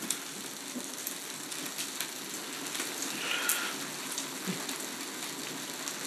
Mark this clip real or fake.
real